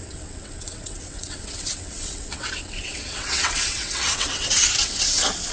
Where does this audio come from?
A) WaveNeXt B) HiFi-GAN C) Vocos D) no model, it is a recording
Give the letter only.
A